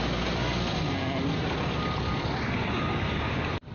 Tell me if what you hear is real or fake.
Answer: real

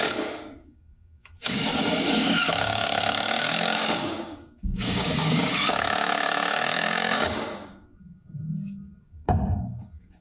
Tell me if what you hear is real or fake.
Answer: fake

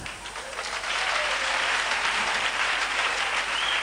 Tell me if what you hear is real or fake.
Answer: fake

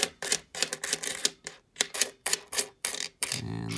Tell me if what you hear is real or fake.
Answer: fake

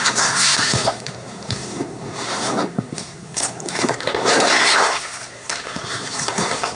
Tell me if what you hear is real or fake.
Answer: fake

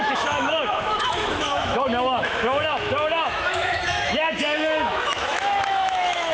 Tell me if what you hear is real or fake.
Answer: fake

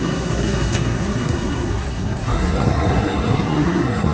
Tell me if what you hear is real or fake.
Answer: fake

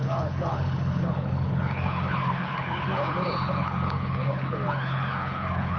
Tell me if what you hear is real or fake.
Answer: fake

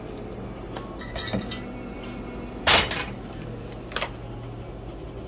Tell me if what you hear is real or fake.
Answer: real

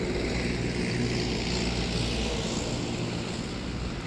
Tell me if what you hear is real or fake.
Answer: real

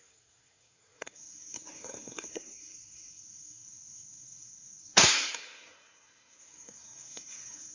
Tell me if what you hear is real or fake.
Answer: fake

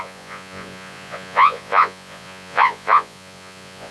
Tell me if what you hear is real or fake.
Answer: fake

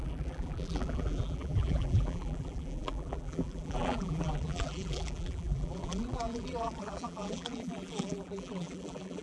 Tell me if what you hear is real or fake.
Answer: fake